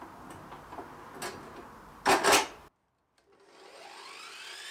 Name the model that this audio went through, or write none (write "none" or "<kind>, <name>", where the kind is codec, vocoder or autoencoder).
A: none